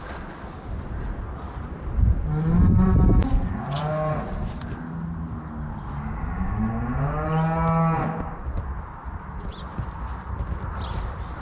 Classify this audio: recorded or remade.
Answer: recorded